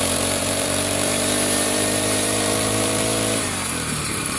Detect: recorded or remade remade